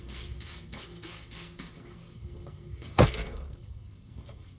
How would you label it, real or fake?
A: fake